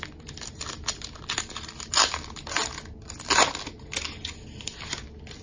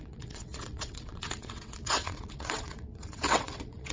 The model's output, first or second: second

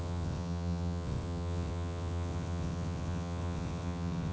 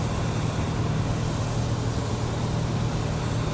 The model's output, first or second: first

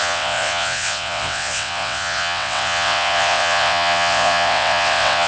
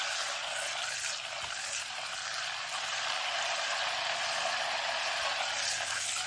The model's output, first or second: first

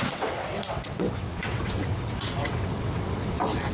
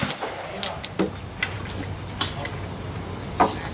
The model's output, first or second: first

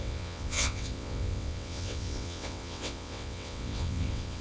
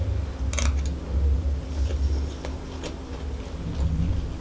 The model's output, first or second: first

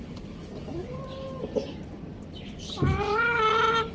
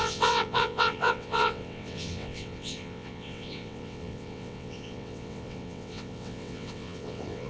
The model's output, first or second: second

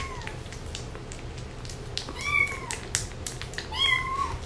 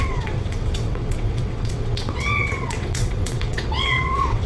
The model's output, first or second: second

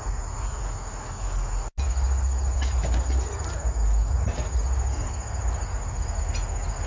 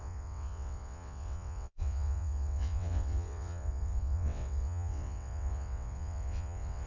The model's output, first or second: second